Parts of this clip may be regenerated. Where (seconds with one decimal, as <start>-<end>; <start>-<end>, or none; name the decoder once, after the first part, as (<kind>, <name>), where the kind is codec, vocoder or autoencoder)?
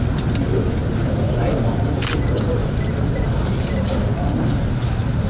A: none